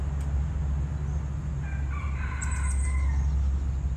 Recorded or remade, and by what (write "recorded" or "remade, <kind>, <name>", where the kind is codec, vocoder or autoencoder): recorded